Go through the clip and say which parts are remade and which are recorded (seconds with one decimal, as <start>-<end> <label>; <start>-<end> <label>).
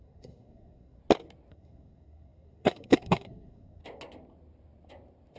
0.0-1.0 remade; 1.0-1.5 recorded; 1.5-3.8 remade; 3.8-5.4 recorded